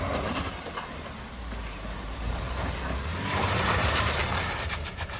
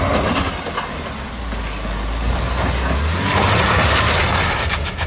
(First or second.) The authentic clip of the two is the second